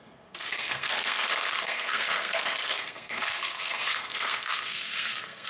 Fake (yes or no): yes